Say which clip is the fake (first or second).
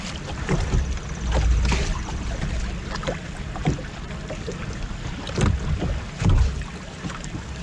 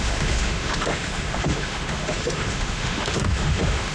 second